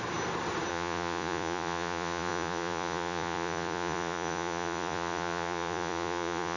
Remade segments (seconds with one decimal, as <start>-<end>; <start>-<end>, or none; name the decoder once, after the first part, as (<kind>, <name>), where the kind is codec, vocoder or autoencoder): 0.7-6.6 (vocoder, Vocos)